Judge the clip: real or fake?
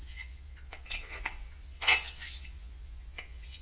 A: fake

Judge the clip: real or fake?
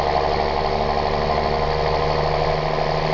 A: real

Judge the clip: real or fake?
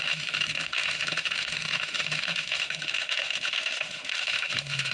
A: fake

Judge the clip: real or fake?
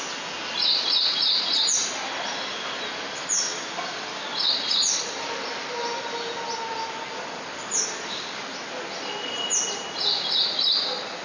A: real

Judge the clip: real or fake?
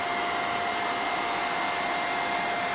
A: real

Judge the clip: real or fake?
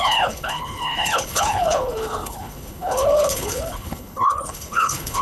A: fake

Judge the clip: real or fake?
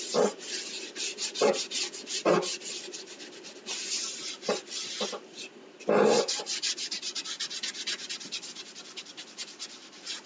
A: fake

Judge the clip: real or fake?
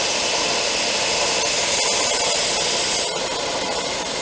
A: real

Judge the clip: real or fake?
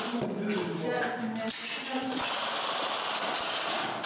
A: real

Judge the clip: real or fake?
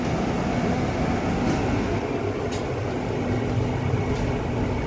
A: real